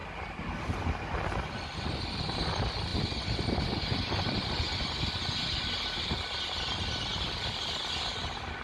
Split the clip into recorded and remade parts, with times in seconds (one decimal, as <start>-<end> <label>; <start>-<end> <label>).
0.0-8.6 recorded